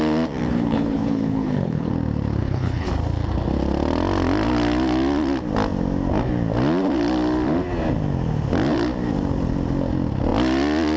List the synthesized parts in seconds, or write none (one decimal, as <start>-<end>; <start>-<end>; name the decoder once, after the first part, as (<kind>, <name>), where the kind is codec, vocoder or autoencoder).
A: 0.5-1.9 (codec, HILCodec); 2.4-2.9